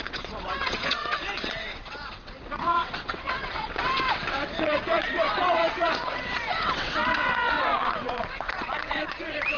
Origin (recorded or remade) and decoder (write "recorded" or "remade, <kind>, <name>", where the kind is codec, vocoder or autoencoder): remade, vocoder, WaveNeXt